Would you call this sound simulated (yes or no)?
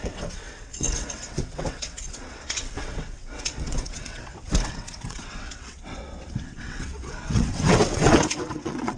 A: yes